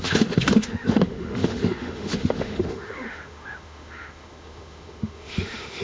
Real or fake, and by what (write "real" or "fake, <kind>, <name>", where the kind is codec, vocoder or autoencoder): fake, autoencoder, DAC-VAE